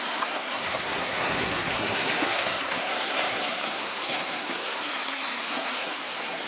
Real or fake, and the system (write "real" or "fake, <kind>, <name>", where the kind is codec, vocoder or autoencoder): fake, codec, SNAC